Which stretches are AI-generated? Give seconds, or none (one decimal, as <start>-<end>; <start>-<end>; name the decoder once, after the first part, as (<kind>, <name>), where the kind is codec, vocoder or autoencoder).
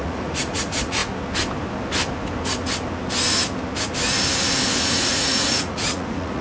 0.0-1.0 (vocoder, Vocos); 4.8-6.4